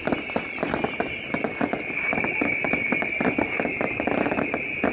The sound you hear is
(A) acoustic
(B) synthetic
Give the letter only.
A